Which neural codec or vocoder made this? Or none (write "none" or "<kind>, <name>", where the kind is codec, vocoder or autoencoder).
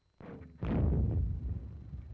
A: none